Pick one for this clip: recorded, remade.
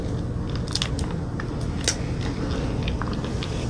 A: recorded